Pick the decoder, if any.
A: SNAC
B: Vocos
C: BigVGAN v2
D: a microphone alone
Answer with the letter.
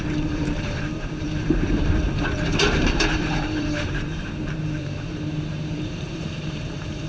C